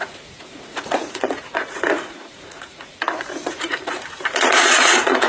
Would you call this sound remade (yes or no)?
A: yes